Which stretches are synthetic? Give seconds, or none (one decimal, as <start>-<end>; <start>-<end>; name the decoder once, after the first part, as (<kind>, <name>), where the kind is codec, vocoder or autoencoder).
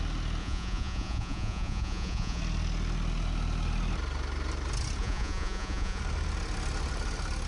0.4-2.4 (vocoder, Vocos); 5.0-6.0